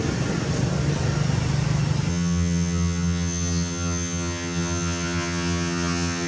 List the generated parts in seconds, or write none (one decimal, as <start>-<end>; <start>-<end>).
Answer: 2.1-6.3